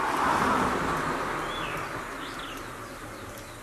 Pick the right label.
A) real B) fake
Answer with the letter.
A